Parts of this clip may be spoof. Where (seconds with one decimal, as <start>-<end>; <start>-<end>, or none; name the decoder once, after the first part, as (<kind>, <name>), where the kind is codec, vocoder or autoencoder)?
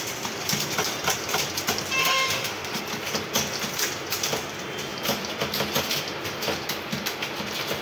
2.0-2.8 (autoencoder, DAC-VAE)